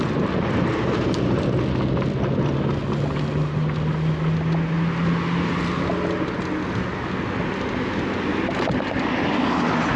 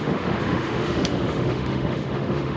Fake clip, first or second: second